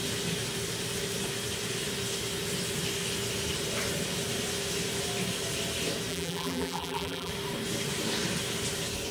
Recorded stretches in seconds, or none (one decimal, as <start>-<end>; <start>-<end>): 0.0-6.1; 7.3-9.1